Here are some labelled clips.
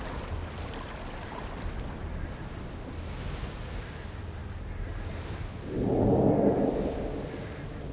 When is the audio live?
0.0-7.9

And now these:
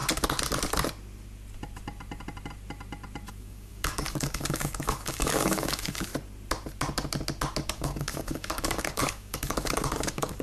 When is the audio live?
0.0-3.3; 6.1-7.7